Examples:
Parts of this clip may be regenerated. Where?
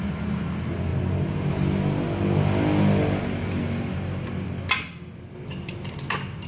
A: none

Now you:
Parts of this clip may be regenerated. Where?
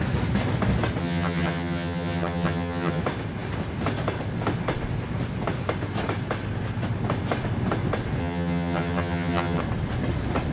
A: 1.0-3.0 (vocoder, HiFi-GAN); 8.2-9.6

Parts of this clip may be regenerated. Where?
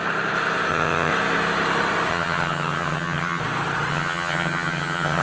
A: 0.7-1.1 (vocoder, HiFi-GAN); 2.1-3.4; 3.9-5.2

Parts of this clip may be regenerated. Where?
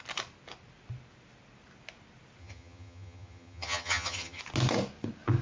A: 2.4-4.4 (vocoder, HiFi-GAN)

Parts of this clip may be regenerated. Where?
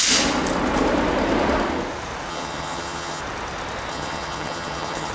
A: 2.3-3.2 (vocoder, HiFi-GAN); 3.9-5.1